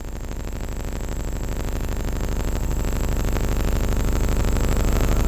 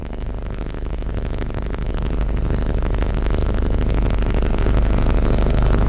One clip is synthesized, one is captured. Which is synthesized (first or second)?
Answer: second